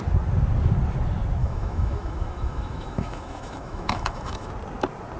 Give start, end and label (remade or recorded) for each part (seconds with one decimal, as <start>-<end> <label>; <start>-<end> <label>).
0.0-1.4 recorded; 1.4-4.5 remade; 4.5-5.2 recorded